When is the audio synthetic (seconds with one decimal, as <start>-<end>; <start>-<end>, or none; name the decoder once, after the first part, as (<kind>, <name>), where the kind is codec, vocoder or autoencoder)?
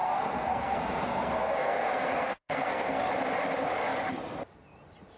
0.0-3.1 (codec, SNAC)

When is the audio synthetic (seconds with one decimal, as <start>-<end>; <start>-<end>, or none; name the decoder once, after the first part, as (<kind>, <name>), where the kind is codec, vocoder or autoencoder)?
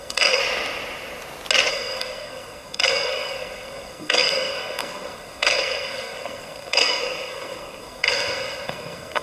0.0-0.4 (codec, SNAC); 1.7-9.2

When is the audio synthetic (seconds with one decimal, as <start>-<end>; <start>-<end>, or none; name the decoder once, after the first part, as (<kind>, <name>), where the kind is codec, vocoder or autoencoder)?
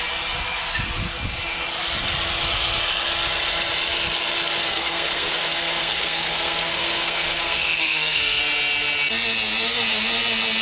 4.6-8.4 (codec, SNAC)